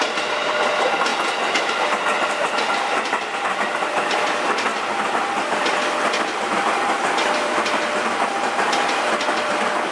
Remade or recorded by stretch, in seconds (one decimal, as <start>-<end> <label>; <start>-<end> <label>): 0.0-1.1 remade; 1.1-1.6 recorded; 1.6-4.7 remade; 4.7-6.2 recorded; 6.2-9.9 remade